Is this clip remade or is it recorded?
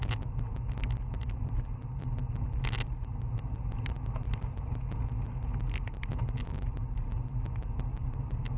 recorded